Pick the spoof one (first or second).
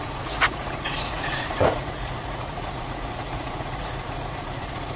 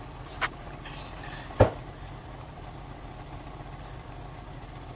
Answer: first